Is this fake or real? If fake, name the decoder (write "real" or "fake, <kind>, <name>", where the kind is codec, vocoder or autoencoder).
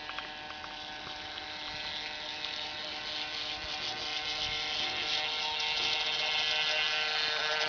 real